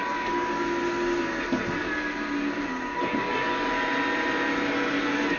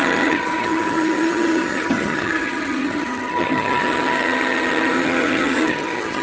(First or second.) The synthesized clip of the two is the second